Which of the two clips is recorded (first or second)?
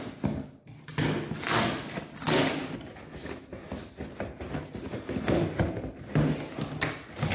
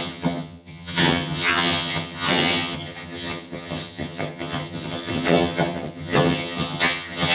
first